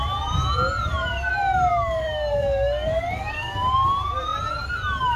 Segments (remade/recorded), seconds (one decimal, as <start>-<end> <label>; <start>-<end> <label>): 0.0-1.7 recorded; 1.7-3.7 remade; 3.7-5.2 recorded

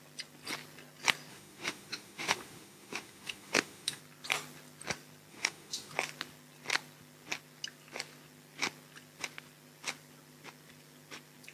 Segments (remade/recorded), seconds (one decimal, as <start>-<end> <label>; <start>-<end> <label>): 0.0-1.3 recorded; 1.3-4.0 remade; 4.0-5.3 recorded; 5.3-5.9 remade; 5.9-11.5 recorded

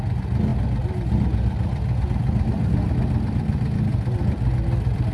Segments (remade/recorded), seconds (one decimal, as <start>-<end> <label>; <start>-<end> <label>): 0.0-5.1 recorded

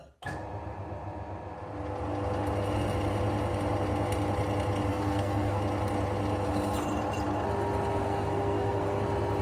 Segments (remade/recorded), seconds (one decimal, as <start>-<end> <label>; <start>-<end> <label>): 0.0-4.9 recorded; 4.9-5.6 remade; 5.6-8.0 recorded; 8.0-9.0 remade; 9.0-9.4 recorded

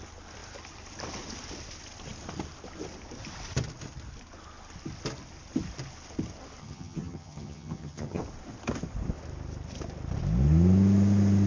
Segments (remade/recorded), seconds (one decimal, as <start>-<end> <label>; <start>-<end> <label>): 0.0-6.6 recorded; 6.6-8.2 remade; 8.2-11.5 recorded

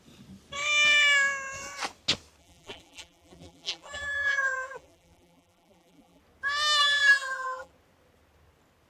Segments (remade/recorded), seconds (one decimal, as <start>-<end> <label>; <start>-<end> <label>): 0.0-2.4 recorded; 2.4-6.2 remade; 6.2-6.8 recorded; 6.8-7.7 remade; 7.7-8.9 recorded

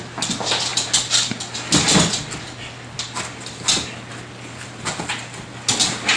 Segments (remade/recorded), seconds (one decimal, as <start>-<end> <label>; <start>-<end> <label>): 0.0-6.2 recorded

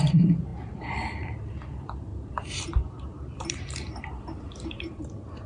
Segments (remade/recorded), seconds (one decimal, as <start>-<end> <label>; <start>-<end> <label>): 0.0-5.5 remade